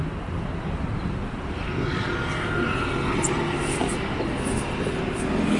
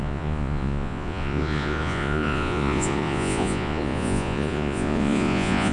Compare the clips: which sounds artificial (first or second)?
second